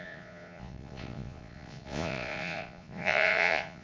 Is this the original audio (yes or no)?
no